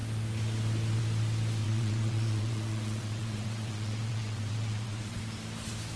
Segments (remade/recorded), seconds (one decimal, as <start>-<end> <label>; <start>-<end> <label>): 0.0-1.6 recorded; 1.6-5.2 remade; 5.2-6.0 recorded